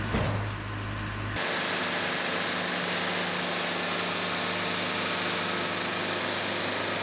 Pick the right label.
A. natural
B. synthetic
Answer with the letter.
A